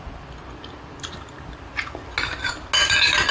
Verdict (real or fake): real